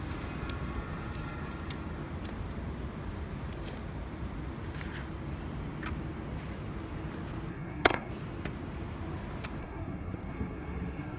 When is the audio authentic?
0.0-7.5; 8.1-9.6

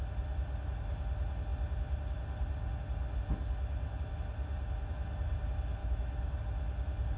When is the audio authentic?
0.0-5.8; 6.4-7.2

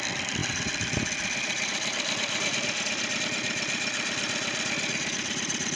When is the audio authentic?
0.0-0.4; 3.2-5.8

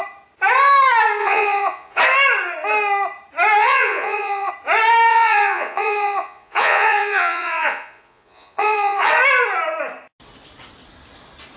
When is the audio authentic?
0.0-1.2; 2.0-3.6; 4.5-5.1; 9.1-11.6